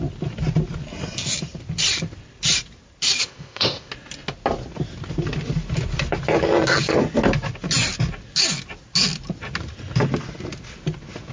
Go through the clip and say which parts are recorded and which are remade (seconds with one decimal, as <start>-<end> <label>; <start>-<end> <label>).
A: 0.0-3.2 recorded; 3.2-3.9 remade; 3.9-11.3 recorded